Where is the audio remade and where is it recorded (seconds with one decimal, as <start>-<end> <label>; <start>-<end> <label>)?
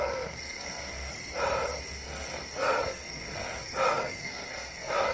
0.0-1.1 remade; 1.1-1.8 recorded; 1.8-5.1 remade